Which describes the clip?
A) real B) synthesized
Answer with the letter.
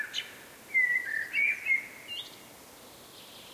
A